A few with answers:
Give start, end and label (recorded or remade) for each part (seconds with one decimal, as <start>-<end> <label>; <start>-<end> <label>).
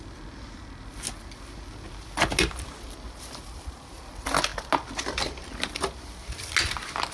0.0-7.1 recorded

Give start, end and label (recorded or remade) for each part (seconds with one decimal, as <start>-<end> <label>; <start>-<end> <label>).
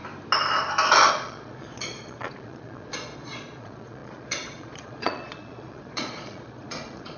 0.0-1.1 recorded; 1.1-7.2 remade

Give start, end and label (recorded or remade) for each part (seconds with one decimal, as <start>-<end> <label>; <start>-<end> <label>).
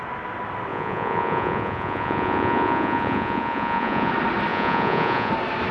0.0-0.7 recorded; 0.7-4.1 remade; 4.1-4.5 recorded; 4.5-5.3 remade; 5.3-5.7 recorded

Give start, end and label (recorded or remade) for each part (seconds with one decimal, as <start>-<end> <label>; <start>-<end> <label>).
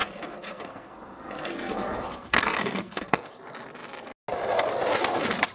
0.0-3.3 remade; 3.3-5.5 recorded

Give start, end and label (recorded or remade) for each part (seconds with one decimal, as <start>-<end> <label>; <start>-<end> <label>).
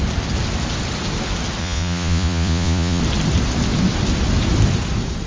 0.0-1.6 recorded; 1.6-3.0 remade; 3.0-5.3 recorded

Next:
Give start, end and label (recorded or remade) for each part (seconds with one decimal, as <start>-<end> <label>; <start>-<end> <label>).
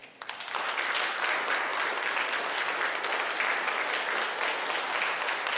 0.0-1.1 remade; 1.1-5.6 recorded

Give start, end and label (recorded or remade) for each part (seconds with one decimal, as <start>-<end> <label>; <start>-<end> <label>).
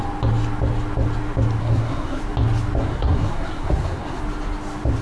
0.0-1.6 recorded; 1.6-2.2 remade; 2.2-2.8 recorded; 2.8-4.2 remade; 4.2-5.0 recorded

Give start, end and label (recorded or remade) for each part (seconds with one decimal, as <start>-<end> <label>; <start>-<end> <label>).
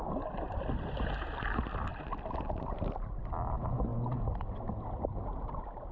0.0-5.9 recorded